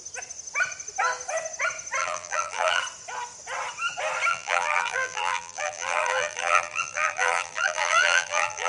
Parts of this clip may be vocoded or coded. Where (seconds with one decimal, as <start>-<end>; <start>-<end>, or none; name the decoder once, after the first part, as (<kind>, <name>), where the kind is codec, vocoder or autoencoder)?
2.0-2.8 (vocoder, BigVGAN v2); 4.3-8.7